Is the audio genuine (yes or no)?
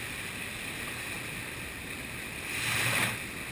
yes